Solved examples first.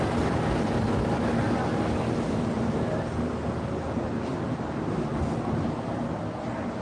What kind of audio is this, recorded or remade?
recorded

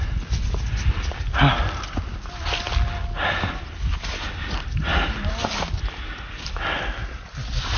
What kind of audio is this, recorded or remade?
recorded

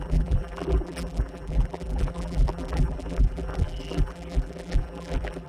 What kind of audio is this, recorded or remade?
remade